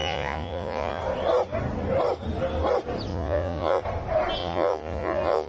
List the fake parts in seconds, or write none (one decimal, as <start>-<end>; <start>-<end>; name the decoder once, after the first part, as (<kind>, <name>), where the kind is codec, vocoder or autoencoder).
0.0-1.0 (vocoder, Vocos); 3.1-3.8; 4.4-5.5